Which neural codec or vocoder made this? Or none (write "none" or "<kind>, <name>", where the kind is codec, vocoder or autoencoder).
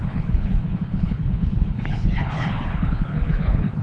codec, HILCodec